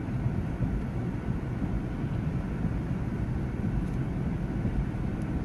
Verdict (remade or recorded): recorded